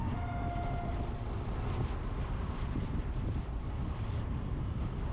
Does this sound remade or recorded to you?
recorded